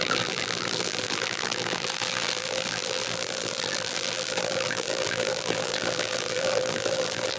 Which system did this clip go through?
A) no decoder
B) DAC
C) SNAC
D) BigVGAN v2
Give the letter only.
D